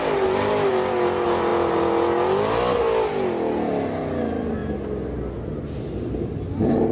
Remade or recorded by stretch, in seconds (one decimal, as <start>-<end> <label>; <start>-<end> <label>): 0.0-6.9 recorded